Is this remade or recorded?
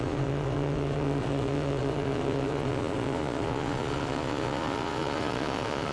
remade